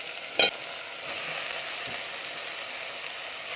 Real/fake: real